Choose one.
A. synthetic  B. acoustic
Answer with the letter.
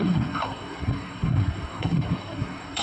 A